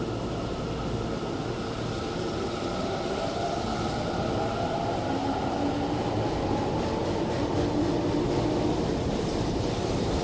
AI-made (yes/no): no